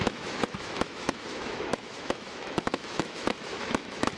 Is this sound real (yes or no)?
no